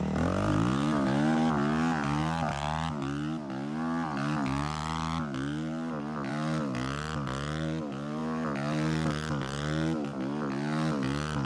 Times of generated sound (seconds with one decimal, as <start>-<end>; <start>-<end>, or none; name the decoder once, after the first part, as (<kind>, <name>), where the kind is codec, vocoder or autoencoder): none